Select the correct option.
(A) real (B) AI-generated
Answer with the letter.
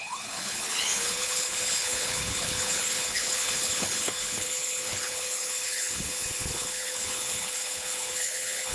B